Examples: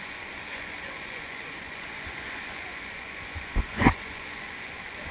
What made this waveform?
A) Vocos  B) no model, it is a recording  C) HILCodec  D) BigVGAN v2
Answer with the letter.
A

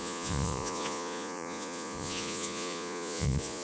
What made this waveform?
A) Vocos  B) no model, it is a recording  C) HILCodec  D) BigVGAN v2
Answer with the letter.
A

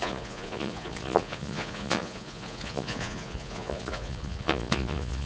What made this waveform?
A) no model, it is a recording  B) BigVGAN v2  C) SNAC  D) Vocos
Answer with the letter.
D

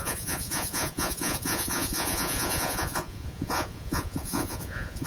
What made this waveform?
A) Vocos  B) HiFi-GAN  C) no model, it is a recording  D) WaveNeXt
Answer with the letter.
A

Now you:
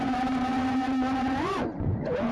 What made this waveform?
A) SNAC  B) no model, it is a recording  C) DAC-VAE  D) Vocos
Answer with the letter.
D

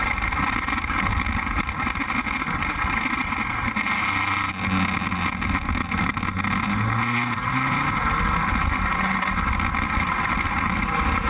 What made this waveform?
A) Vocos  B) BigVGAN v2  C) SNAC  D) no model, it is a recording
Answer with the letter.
D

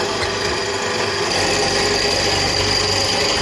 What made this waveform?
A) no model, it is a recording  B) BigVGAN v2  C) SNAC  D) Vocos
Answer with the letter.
A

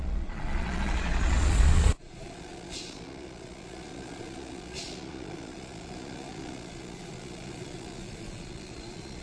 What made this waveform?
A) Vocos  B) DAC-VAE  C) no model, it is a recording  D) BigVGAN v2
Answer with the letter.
A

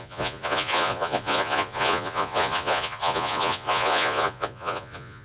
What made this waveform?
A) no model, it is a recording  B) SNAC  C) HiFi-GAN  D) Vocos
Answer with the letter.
D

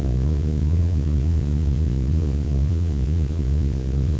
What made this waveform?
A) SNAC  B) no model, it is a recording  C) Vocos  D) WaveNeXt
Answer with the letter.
C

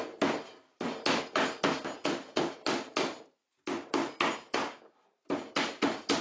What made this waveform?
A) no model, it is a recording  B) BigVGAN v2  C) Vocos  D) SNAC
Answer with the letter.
A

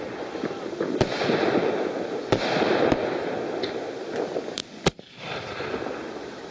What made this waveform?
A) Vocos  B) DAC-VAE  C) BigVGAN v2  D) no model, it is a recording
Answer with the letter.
D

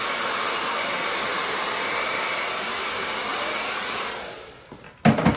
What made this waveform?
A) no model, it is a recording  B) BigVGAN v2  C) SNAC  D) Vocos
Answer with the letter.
A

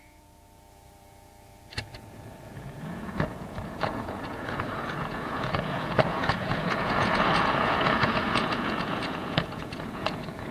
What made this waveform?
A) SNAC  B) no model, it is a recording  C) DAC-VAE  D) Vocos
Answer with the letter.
D